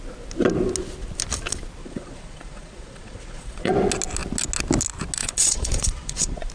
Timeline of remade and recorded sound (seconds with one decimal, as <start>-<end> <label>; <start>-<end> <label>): 0.0-1.8 recorded; 1.8-3.7 remade; 3.7-5.2 recorded; 5.2-6.5 remade